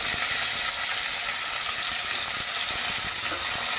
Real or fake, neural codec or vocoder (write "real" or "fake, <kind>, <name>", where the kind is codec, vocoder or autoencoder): real